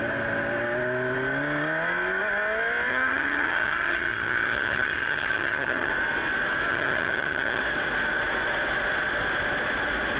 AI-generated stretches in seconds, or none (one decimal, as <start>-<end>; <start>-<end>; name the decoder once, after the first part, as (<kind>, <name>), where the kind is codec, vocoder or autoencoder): 2.9-5.9 (vocoder, HiFi-GAN); 6.7-7.6